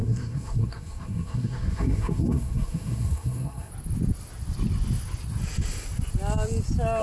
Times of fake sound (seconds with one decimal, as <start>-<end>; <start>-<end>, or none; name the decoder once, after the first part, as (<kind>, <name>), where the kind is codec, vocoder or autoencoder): 0.0-3.7 (codec, SNAC)